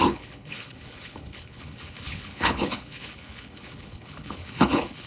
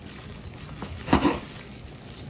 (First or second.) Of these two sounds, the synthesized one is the first